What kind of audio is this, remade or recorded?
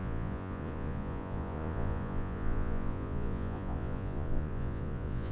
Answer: remade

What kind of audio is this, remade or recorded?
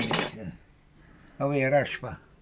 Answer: recorded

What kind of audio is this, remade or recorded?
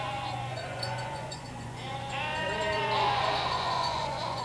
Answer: remade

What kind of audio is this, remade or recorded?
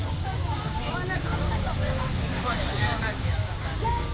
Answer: remade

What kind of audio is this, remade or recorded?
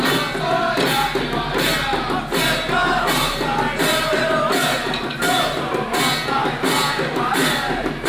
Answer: recorded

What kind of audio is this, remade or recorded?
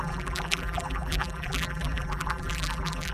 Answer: remade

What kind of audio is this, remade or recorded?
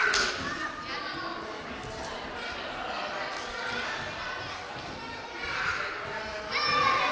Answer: recorded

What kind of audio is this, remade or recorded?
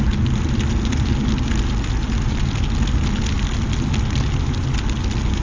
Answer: recorded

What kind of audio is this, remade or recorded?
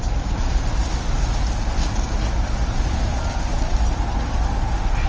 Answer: recorded